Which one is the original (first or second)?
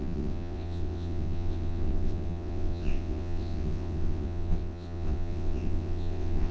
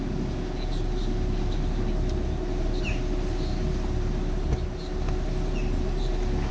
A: second